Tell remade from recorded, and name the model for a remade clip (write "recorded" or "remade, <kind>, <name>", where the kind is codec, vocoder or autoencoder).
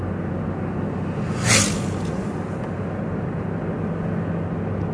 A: recorded